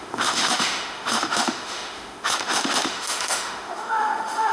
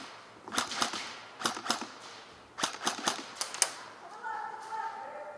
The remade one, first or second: first